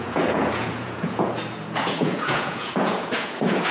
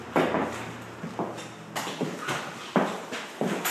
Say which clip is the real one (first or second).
second